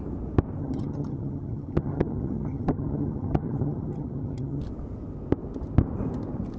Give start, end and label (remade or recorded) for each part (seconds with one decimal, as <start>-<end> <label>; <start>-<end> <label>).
0.0-0.6 recorded; 0.6-4.6 remade; 4.6-6.6 recorded